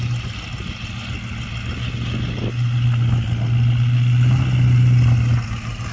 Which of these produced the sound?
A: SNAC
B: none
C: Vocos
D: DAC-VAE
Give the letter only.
B